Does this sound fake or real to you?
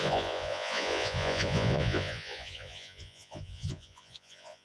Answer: fake